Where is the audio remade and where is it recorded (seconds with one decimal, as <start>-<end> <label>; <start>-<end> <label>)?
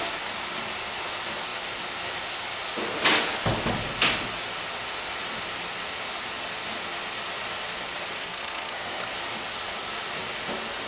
0.0-8.2 recorded; 8.2-9.1 remade; 9.1-10.9 recorded